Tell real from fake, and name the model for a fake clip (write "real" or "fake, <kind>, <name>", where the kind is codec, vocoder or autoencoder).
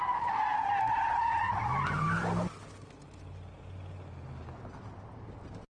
real